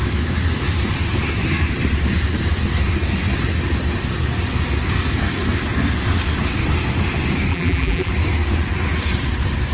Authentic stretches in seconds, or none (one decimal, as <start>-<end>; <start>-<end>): 0.0-7.5; 8.1-9.7